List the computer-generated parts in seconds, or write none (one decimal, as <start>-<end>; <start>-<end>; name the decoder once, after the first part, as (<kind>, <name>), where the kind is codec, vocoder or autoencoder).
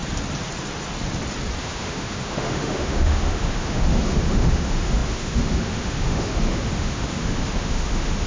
1.6-8.3 (autoencoder, DAC-VAE)